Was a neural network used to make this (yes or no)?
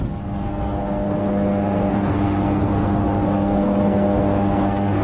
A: yes